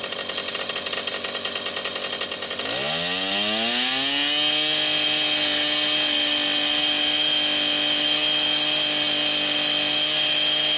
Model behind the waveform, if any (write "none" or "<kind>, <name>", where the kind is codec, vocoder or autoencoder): none